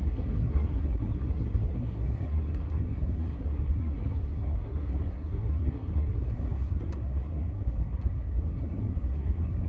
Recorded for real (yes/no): no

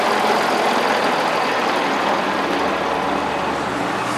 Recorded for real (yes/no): yes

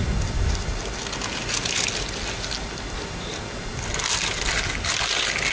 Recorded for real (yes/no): yes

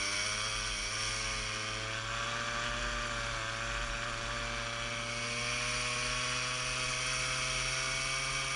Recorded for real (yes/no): yes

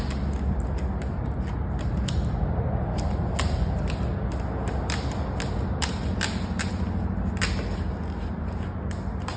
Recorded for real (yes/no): yes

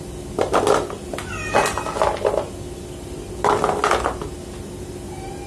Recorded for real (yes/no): yes